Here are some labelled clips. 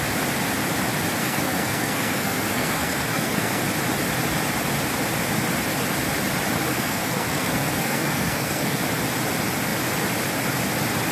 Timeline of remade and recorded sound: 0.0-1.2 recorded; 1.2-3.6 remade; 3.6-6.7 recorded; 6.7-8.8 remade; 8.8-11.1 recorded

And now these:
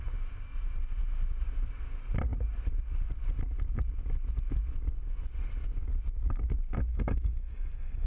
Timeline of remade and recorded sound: 0.0-6.9 recorded; 6.9-8.1 remade

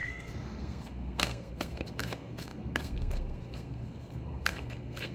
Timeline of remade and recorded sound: 0.0-5.1 remade